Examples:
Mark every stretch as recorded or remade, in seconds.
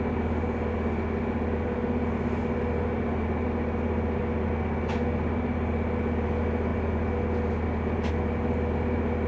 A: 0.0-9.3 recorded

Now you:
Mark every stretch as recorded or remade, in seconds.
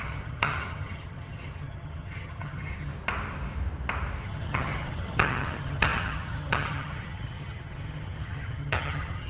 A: 0.0-2.9 remade; 2.9-4.2 recorded; 4.2-9.3 remade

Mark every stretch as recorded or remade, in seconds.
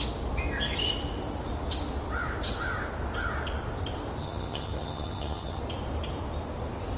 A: 0.0-4.2 recorded; 4.2-5.6 remade; 5.6-7.0 recorded